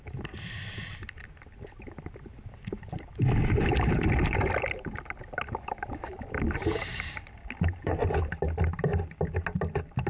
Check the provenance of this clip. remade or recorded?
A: recorded